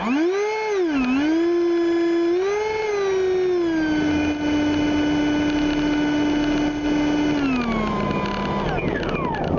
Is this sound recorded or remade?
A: recorded